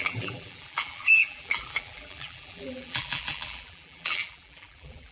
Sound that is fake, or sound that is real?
fake